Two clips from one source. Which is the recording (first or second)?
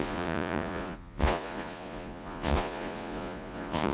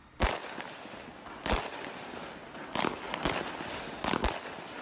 second